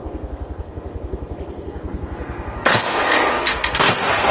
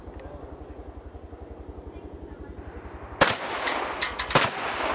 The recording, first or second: second